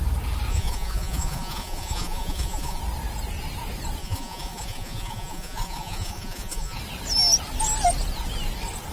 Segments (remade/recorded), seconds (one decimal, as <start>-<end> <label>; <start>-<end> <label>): 0.0-0.5 recorded; 0.5-2.8 remade; 2.8-4.0 recorded; 4.0-6.8 remade; 6.8-8.9 recorded